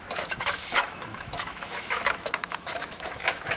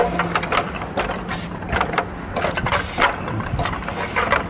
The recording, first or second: second